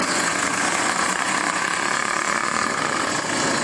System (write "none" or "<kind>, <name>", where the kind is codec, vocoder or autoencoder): vocoder, Vocos